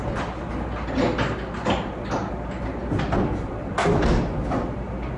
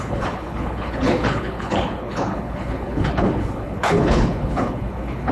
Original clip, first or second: first